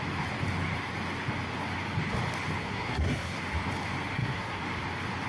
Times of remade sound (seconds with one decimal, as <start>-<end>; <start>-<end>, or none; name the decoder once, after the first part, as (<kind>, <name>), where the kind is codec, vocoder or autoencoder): 2.6-3.4 (codec, SNAC); 4.1-4.6